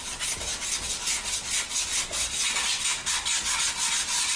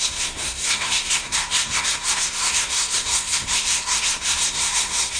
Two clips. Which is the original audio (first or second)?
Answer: first